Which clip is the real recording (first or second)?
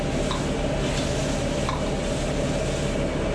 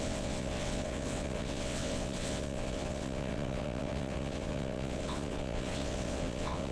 first